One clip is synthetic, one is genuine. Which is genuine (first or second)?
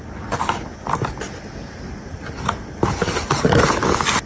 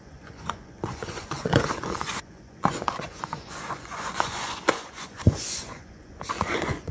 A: first